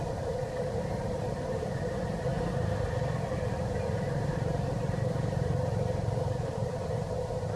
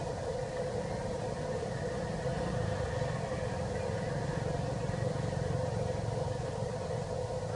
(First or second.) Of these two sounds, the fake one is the first